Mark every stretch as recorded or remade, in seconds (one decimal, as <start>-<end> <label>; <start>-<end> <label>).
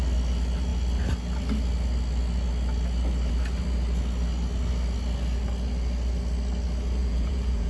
0.0-7.0 recorded; 7.0-7.7 remade